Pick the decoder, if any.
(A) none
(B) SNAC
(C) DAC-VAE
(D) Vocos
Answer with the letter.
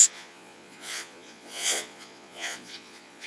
D